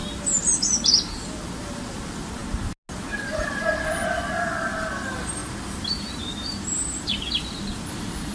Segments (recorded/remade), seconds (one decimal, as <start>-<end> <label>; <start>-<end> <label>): 0.0-2.4 remade; 2.4-3.7 recorded; 3.7-8.3 remade